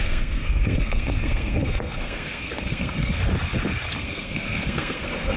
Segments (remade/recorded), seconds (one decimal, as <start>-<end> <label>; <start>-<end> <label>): 0.0-3.2 remade; 3.2-4.0 recorded; 4.0-5.4 remade